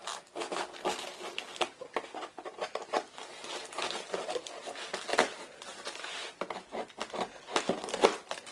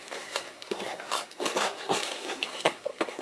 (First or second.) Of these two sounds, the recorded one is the first